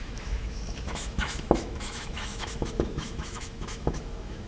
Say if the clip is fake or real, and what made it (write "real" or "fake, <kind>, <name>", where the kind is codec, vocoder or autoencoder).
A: fake, autoencoder, DAC-VAE